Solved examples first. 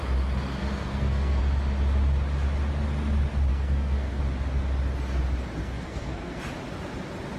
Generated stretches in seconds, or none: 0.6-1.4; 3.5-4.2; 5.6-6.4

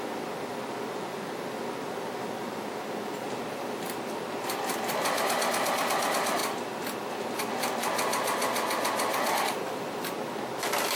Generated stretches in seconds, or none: none

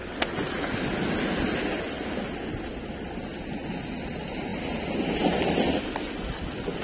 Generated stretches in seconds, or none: none

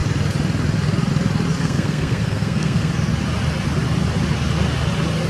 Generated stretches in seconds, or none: 1.6-2.9

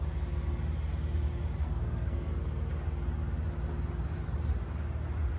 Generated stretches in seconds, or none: 1.6-2.3

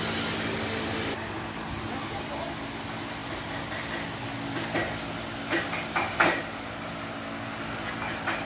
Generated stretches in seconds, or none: none

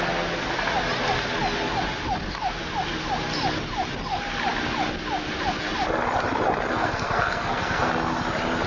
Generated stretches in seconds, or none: 6.7-7.9

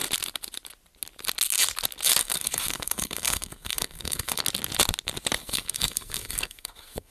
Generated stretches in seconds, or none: 2.2-4.4; 5.4-7.1